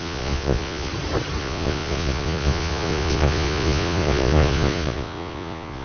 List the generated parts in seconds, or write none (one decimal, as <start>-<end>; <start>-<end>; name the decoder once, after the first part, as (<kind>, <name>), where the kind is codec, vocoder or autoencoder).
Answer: 0.0-0.9 (vocoder, Vocos); 1.4-5.8